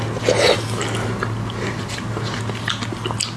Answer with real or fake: real